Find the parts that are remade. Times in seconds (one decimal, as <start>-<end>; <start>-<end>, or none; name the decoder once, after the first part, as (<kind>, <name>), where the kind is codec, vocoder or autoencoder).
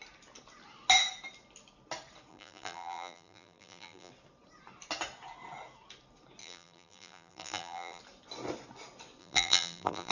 2.3-4.1 (vocoder, BigVGAN v2); 6.4-8.0; 9.2-10.1